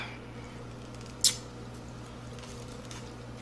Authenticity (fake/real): real